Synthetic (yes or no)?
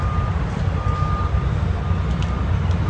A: no